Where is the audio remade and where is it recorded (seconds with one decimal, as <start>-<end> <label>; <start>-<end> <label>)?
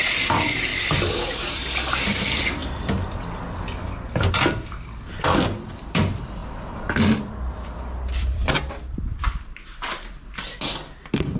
0.0-2.6 remade; 2.6-4.3 recorded; 4.3-11.4 remade